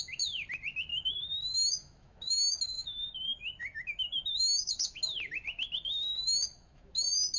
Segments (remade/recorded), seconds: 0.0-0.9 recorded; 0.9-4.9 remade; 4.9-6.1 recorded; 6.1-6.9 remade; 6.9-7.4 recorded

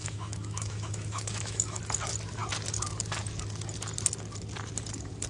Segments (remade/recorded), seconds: 0.0-1.8 remade; 1.8-5.3 recorded

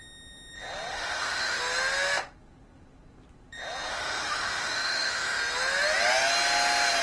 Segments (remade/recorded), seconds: 0.0-0.9 recorded; 0.9-1.6 remade; 1.6-3.9 recorded; 3.9-5.4 remade; 5.4-7.0 recorded

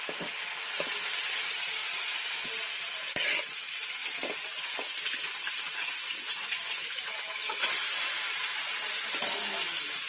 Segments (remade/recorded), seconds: 0.0-6.8 recorded; 6.8-7.7 remade; 7.7-10.1 recorded

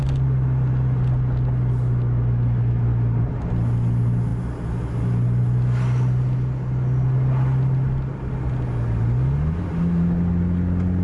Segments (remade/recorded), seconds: 0.0-11.0 recorded

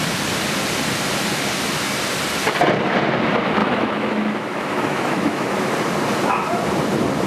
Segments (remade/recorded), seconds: 0.0-3.6 recorded; 3.6-5.5 remade; 5.5-7.3 recorded